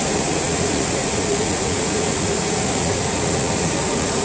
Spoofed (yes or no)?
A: yes